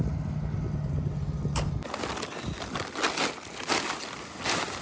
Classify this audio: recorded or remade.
recorded